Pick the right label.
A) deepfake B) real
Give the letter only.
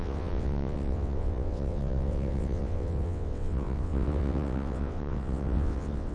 A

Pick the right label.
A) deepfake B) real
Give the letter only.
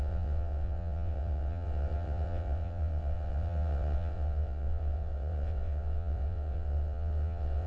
A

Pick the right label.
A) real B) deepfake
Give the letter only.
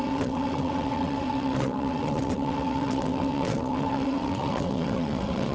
B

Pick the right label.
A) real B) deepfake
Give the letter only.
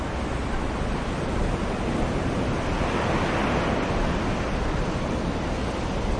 A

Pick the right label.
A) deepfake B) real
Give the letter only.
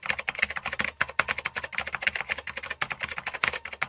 B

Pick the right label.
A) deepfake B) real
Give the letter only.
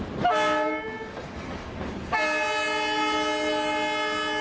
B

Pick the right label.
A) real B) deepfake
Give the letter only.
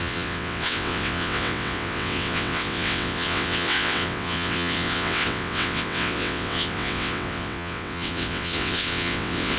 B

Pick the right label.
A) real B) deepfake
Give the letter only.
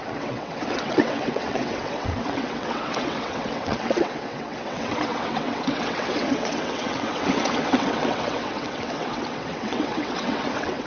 B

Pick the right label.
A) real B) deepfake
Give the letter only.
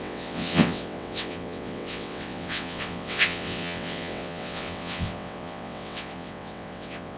B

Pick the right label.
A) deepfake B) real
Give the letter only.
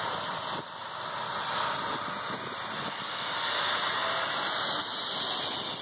B